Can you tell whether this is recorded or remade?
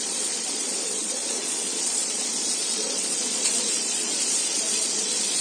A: remade